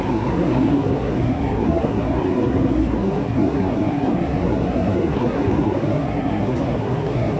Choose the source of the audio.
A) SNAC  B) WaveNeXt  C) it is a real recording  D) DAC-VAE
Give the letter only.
A